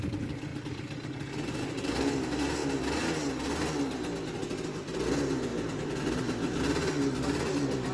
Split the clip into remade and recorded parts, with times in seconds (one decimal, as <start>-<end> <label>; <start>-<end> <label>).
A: 0.0-5.5 recorded; 5.5-6.6 remade; 6.6-7.9 recorded